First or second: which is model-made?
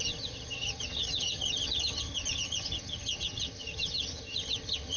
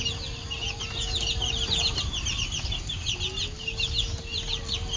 first